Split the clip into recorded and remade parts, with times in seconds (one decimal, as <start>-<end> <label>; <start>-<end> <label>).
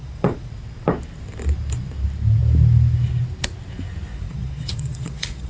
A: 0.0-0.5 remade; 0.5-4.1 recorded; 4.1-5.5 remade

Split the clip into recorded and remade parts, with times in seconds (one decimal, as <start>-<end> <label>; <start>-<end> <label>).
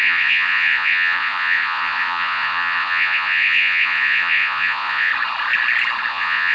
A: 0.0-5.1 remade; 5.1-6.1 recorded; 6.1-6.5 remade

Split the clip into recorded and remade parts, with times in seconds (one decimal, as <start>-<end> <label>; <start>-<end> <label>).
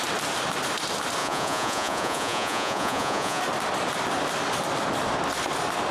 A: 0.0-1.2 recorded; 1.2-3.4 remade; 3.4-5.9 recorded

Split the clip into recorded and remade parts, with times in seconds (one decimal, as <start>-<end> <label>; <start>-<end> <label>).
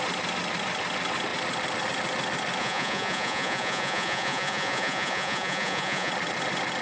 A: 0.0-2.6 recorded; 2.6-6.1 remade; 6.1-6.8 recorded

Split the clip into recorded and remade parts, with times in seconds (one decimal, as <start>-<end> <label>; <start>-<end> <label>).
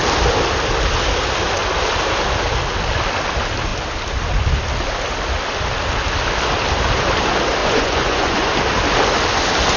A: 0.0-7.6 recorded; 7.6-8.5 remade; 8.5-9.8 recorded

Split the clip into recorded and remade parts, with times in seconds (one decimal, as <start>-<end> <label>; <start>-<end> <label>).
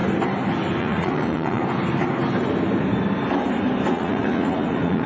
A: 0.0-0.8 recorded; 0.8-1.6 remade; 1.6-3.9 recorded; 3.9-5.1 remade